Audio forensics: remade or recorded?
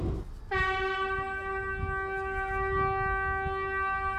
recorded